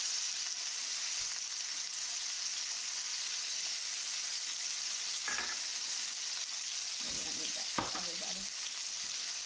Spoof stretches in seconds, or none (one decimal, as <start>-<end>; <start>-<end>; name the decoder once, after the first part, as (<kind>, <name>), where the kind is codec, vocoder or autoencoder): none